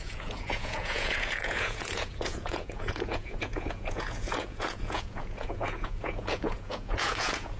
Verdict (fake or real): fake